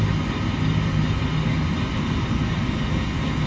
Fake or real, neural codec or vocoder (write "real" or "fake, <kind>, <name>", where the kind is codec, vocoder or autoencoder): real